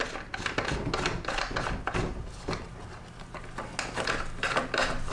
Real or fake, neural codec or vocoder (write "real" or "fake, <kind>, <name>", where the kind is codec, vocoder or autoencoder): real